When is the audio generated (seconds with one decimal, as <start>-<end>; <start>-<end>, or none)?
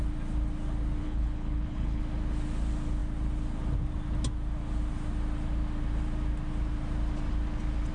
1.0-2.0